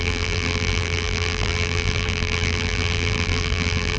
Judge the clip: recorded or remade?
remade